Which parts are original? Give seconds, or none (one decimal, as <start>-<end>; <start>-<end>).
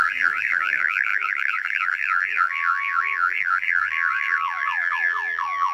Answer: none